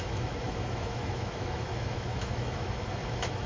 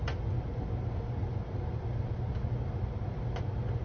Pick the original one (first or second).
second